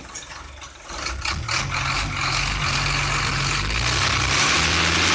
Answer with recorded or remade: recorded